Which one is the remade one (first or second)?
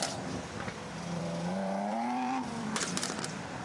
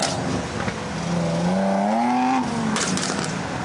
first